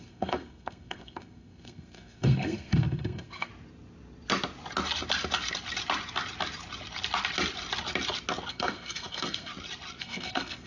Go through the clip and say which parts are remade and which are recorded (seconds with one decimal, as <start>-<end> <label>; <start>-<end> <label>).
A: 0.0-3.5 remade; 3.5-8.5 recorded; 8.5-9.5 remade; 9.5-10.0 recorded; 10.0-10.7 remade